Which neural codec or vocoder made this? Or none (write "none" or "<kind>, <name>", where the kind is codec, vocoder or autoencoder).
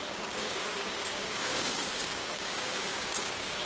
codec, DAC